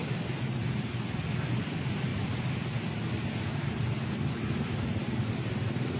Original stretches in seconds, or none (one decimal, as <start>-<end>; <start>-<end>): 0.0-6.0